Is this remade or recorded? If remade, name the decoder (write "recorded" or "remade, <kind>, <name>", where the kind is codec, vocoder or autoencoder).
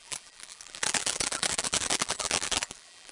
remade, vocoder, BigVGAN v2